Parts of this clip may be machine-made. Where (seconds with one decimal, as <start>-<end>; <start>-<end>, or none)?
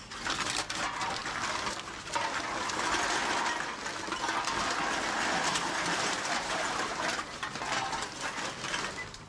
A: 5.4-7.8